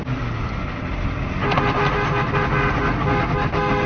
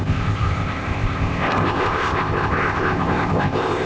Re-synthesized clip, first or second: second